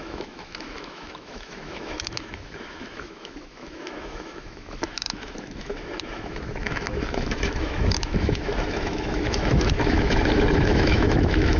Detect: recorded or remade remade